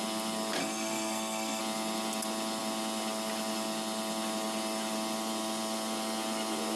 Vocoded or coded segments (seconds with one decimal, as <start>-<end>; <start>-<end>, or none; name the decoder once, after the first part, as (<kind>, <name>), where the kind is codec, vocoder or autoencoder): 0.6-1.6 (codec, SNAC)

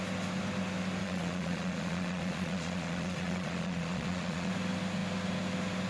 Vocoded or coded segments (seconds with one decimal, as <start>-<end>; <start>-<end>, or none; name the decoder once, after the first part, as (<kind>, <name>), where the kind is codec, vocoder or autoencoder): 1.0-4.5 (vocoder, Vocos)

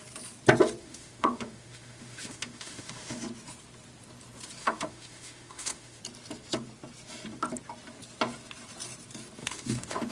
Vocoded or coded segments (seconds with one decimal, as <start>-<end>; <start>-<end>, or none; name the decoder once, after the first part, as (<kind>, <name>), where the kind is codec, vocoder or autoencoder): 0.8-3.2 (autoencoder, DAC-VAE); 4.6-6.0; 9.4-10.1

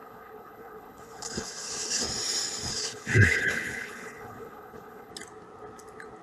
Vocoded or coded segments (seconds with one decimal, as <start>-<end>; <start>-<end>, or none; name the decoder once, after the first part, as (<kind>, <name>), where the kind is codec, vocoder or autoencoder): 0.0-2.0 (codec, HILCodec); 2.7-5.1

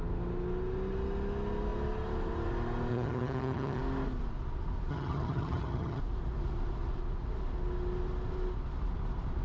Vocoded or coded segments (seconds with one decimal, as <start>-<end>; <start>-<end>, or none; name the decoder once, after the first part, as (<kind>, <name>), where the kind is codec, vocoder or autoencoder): 2.9-3.8 (vocoder, HiFi-GAN); 4.9-6.0

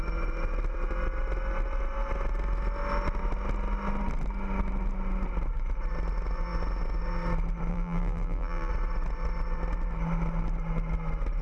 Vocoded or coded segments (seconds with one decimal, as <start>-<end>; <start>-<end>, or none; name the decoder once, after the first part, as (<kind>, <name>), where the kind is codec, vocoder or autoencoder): 7.7-8.7 (vocoder, BigVGAN v2)

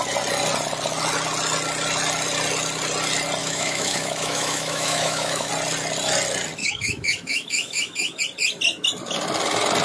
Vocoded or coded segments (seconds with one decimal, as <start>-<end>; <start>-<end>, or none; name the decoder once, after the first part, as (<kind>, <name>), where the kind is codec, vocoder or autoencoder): 3.4-5.5 (autoencoder, DAC-VAE); 6.6-8.2